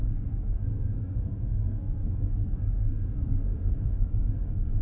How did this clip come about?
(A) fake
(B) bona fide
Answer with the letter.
A